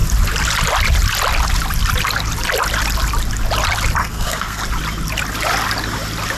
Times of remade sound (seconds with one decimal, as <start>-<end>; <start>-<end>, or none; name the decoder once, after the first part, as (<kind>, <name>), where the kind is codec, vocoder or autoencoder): 4.0-4.6 (codec, SNAC)